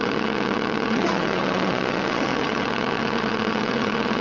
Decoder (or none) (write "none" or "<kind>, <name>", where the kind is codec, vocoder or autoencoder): vocoder, WaveNeXt